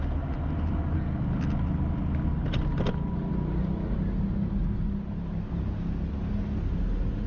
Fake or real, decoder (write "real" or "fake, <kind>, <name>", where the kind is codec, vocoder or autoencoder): real